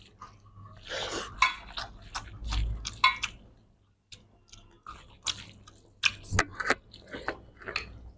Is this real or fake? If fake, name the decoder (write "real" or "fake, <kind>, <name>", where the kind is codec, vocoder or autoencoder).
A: real